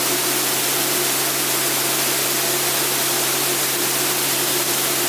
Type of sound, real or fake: real